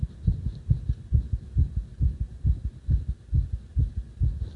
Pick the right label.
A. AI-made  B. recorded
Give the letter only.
B